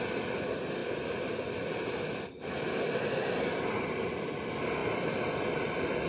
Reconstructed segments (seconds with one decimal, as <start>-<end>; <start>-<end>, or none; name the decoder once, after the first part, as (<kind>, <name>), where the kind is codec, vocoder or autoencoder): 0.8-4.3 (vocoder, BigVGAN v2); 4.8-5.5